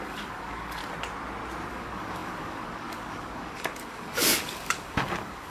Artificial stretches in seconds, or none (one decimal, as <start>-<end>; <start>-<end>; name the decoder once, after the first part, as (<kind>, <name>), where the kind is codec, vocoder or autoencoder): 0.0-0.8 (codec, DAC); 1.7-5.5